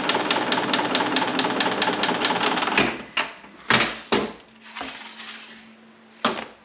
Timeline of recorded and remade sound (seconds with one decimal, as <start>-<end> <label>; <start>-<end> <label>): 0.0-6.6 recorded